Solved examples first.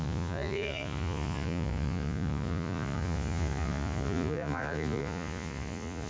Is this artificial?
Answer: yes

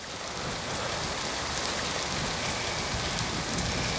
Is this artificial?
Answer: no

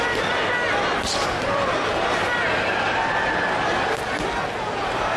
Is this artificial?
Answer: no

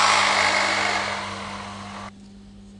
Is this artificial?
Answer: no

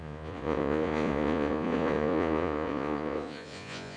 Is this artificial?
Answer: yes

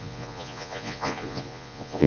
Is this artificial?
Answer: yes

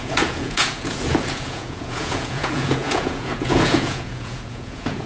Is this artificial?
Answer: yes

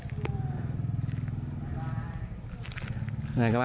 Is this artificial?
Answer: no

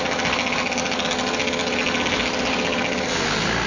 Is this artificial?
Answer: no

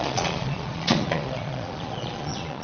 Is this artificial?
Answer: yes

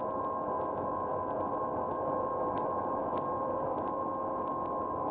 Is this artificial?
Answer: no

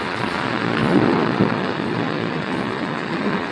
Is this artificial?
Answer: yes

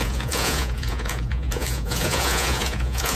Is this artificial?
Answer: yes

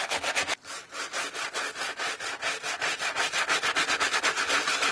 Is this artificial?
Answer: no